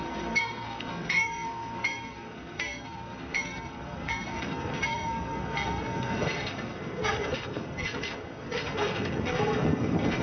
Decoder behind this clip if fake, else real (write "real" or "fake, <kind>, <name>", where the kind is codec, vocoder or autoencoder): fake, codec, SNAC